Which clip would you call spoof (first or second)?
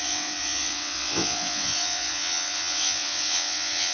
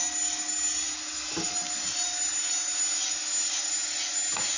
first